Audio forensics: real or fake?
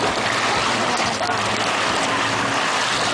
real